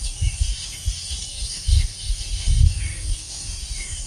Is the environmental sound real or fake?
fake